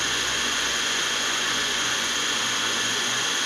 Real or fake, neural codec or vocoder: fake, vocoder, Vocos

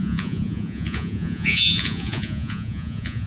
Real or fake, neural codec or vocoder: fake, vocoder, Vocos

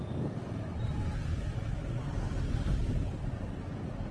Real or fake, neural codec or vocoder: real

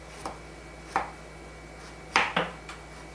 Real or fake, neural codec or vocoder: real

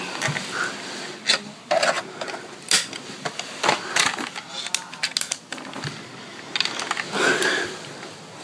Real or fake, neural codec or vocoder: real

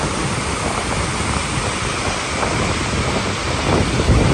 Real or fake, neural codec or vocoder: real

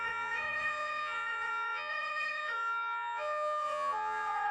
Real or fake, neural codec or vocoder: fake, vocoder, Vocos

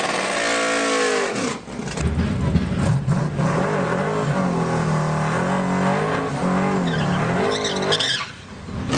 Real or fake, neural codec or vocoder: real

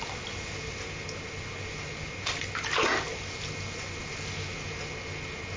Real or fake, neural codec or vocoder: real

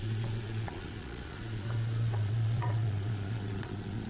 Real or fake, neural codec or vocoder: fake, vocoder, Vocos